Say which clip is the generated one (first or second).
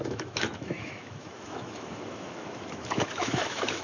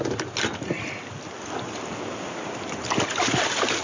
first